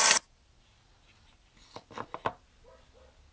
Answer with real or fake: real